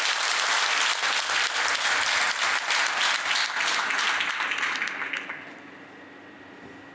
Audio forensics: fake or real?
real